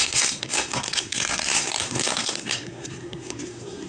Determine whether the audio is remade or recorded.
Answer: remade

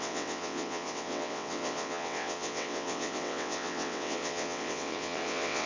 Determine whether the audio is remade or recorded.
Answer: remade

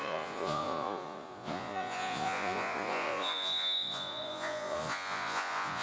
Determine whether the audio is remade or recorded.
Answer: remade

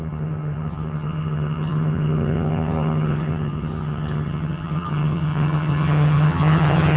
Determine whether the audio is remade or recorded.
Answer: remade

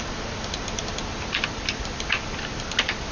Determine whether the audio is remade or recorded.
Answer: recorded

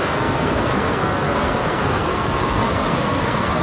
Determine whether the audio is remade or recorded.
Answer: remade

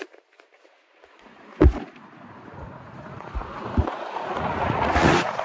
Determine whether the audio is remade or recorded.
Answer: remade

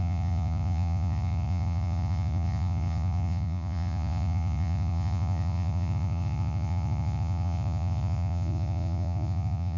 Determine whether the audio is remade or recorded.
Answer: remade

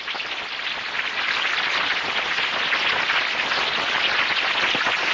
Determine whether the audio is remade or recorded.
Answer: recorded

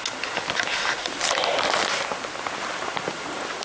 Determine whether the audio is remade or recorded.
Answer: recorded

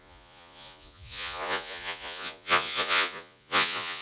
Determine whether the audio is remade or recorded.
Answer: remade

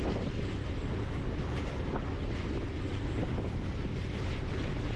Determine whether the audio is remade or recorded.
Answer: recorded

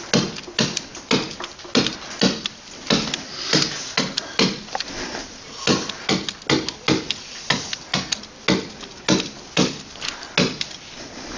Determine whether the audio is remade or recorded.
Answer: recorded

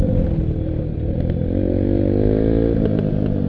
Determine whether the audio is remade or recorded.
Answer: recorded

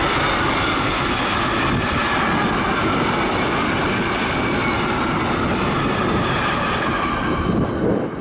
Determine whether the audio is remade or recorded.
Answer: recorded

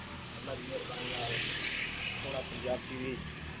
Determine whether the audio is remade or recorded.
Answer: recorded